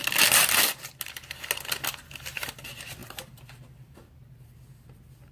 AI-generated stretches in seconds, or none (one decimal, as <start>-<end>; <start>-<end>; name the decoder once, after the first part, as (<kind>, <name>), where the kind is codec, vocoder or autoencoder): none